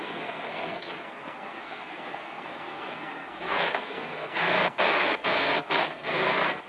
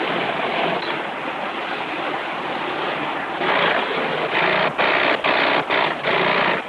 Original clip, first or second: second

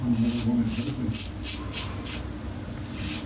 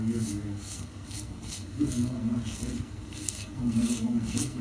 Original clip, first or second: first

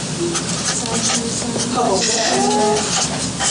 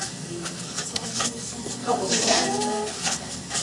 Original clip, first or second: first